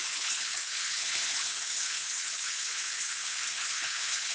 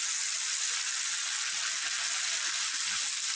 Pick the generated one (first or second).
first